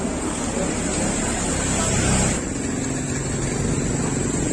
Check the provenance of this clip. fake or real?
real